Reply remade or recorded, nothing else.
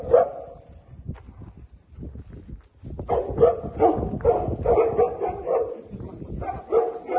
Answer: recorded